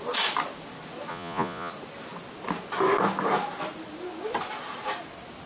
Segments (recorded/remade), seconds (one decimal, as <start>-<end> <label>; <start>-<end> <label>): 0.0-1.1 recorded; 1.1-1.7 remade; 1.7-5.5 recorded